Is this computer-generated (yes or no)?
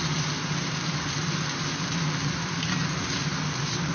no